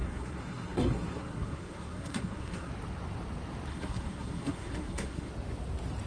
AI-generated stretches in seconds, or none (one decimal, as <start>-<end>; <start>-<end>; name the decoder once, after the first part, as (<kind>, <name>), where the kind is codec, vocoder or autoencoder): 0.0-2.7 (codec, SNAC); 3.7-5.3